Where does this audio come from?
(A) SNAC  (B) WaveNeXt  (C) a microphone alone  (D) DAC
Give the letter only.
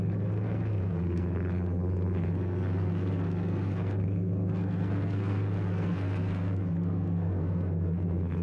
A